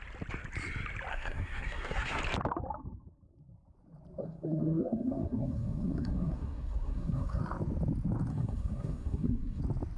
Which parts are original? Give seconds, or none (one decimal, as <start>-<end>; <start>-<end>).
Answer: 0.0-1.1; 2.2-4.2; 7.4-8.3; 9.6-10.0